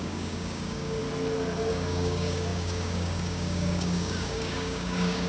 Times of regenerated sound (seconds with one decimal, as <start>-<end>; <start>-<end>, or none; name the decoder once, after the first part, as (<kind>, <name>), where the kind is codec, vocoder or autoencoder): 0.0-1.0 (codec, DAC); 1.7-5.3